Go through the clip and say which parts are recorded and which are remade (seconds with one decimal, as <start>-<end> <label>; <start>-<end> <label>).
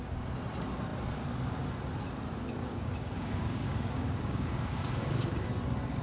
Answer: 0.0-2.6 recorded; 2.6-5.5 remade; 5.5-6.0 recorded